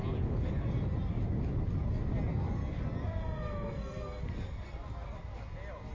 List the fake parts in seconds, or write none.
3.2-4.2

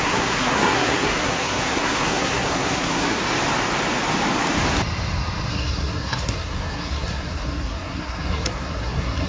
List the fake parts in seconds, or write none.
0.0-3.2; 5.5-9.3

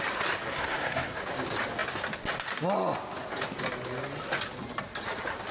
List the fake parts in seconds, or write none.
0.5-1.2

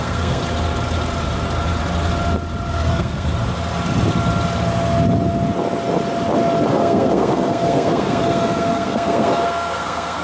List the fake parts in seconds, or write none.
0.0-0.4; 2.7-3.3; 6.7-10.2